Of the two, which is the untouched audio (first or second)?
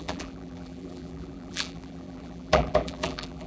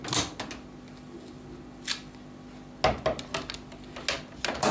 second